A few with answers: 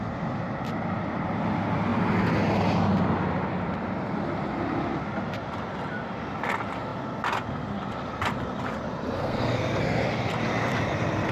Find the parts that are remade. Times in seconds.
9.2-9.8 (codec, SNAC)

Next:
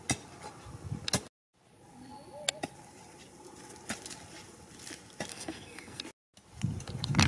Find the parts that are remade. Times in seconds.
5.3-6.0 (codec, SNAC)

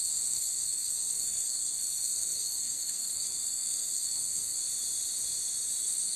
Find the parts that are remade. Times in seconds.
0.0-4.6 (codec, SNAC); 5.8-6.2